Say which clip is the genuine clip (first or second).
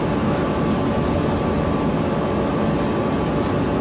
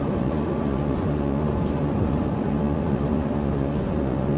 first